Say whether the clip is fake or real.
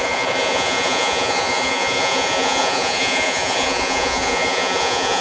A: fake